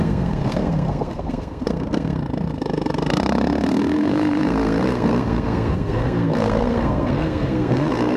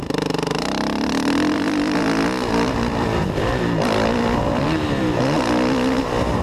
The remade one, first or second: first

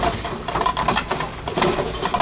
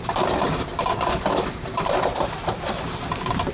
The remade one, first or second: second